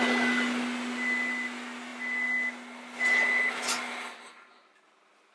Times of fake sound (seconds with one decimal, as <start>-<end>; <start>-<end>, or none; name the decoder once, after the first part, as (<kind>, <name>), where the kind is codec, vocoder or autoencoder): none